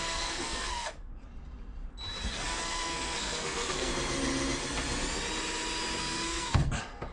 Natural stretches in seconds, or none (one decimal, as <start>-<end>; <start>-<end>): 1.1-2.3; 3.9-6.0